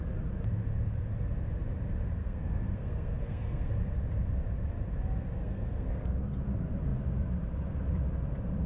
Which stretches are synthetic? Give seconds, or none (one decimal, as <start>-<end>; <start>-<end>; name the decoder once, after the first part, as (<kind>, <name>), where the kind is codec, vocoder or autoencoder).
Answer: 2.2-3.7 (codec, SNAC); 5.4-6.3